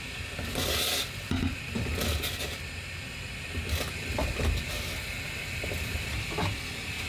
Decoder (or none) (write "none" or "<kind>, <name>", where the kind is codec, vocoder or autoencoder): none